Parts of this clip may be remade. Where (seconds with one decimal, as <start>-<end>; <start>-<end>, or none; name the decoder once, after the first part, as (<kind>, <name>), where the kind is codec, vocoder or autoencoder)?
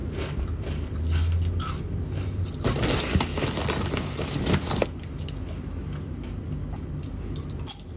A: none